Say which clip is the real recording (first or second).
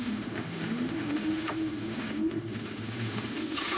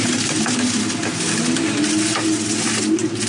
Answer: second